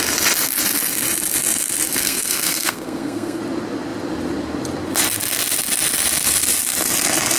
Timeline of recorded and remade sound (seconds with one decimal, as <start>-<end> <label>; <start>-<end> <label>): 0.0-2.0 recorded; 2.0-3.4 remade; 3.4-7.4 recorded